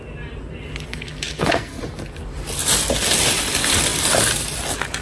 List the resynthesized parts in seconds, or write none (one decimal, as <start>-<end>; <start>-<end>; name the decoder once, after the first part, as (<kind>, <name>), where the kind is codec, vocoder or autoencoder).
0.9-1.8 (codec, SNAC)